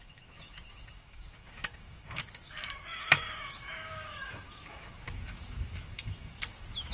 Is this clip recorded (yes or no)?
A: no